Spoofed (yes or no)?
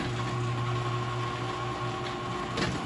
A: no